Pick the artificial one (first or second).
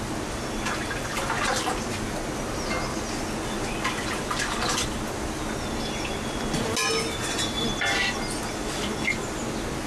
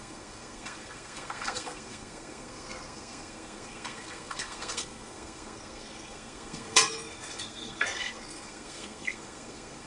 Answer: second